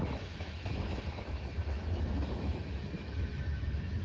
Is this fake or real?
fake